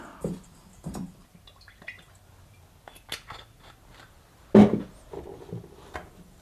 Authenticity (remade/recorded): recorded